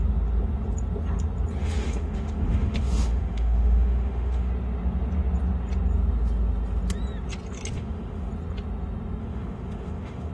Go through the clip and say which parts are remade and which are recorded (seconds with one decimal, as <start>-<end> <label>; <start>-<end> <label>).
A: 0.0-1.6 recorded; 1.6-4.5 remade; 4.5-7.7 recorded; 7.7-8.3 remade; 8.3-9.2 recorded; 9.2-10.3 remade